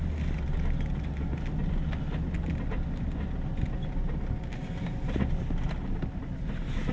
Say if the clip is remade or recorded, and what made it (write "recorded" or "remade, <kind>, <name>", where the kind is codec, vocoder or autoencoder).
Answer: recorded